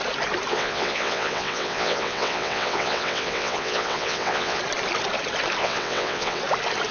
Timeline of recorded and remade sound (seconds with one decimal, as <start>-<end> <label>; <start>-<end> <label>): 0.0-0.5 recorded; 0.5-4.6 remade; 4.6-5.6 recorded; 5.6-6.4 remade; 6.4-6.9 recorded